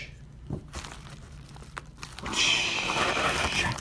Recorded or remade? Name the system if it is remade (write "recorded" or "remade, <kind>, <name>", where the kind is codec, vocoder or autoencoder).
recorded